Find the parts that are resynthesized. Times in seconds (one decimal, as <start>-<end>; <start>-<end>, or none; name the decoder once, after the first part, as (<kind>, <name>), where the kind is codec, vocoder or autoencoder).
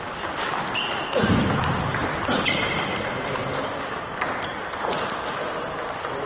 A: 0.0-5.4 (vocoder, BigVGAN v2)